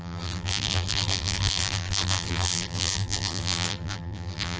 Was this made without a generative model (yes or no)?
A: no